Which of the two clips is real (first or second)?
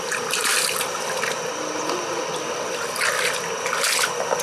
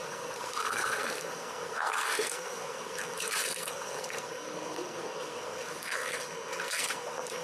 first